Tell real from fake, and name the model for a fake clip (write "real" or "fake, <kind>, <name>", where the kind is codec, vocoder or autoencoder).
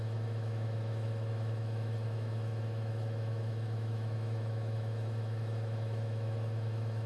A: fake, autoencoder, DAC-VAE